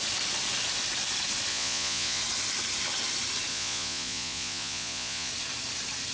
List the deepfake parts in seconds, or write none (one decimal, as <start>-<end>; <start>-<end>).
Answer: 1.5-2.2; 3.5-5.3